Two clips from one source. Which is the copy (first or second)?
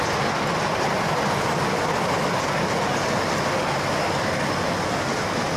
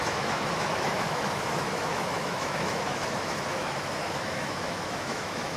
second